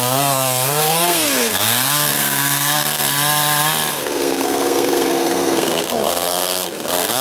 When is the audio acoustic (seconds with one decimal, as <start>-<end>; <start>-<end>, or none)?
3.0-3.9